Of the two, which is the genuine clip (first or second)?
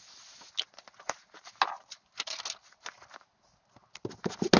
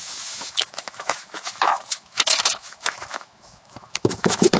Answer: first